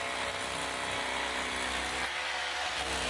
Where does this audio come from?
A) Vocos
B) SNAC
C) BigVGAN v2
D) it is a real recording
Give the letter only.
D